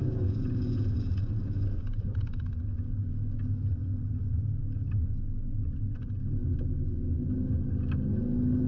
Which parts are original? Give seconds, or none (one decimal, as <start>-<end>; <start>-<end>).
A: 3.0-8.7